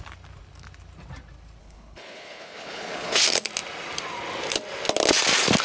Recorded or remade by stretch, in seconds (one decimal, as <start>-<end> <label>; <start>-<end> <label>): 0.0-1.6 recorded; 1.6-3.2 remade; 3.2-5.6 recorded